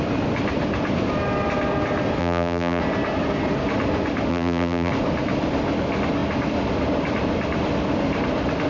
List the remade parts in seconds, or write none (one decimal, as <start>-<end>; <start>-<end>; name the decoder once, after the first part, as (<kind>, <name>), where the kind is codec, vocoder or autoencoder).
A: 2.2-2.8 (vocoder, BigVGAN v2); 4.3-4.9